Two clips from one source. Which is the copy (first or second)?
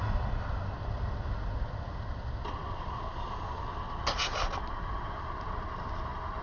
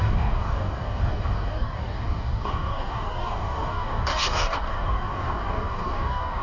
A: second